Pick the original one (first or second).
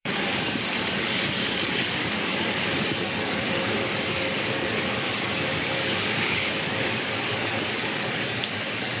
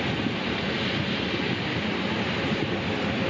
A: second